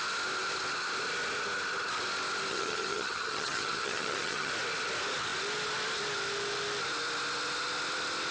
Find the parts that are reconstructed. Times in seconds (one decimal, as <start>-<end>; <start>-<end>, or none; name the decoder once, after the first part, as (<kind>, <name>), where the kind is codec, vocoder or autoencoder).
2.5-4.5 (vocoder, HiFi-GAN)